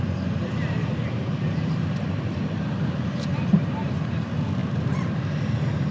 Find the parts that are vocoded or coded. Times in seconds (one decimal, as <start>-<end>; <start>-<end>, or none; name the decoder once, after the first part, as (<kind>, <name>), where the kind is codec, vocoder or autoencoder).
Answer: 0.8-3.9 (vocoder, BigVGAN v2); 4.6-5.9